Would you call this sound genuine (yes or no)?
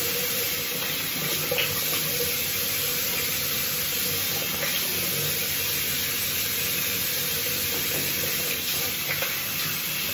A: yes